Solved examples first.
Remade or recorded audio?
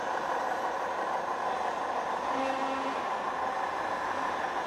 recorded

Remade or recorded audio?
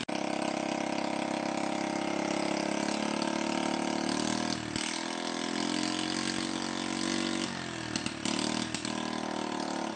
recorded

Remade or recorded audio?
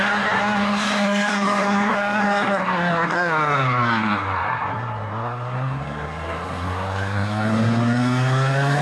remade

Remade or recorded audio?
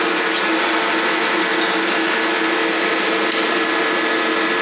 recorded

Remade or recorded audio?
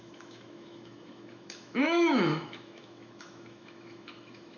remade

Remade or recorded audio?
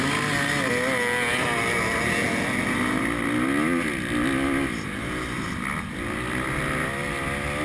recorded